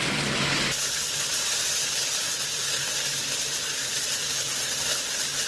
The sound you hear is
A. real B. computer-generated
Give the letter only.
A